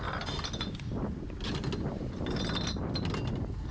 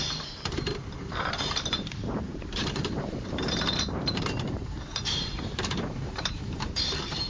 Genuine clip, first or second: first